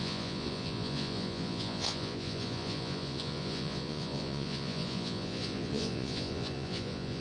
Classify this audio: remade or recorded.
remade